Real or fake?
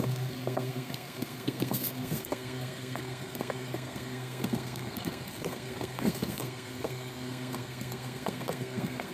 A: fake